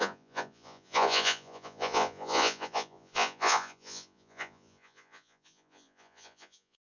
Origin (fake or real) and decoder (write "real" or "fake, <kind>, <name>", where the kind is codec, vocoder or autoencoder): fake, vocoder, Vocos